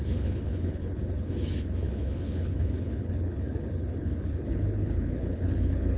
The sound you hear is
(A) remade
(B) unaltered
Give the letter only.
A